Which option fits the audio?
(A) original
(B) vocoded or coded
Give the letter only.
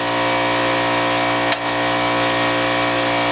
A